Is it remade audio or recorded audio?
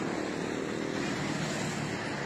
recorded